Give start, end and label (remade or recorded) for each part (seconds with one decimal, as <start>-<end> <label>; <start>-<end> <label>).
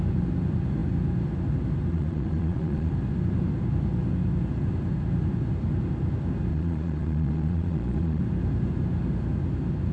0.0-1.9 recorded; 1.9-2.9 remade; 2.9-6.5 recorded; 6.5-8.2 remade; 8.2-9.9 recorded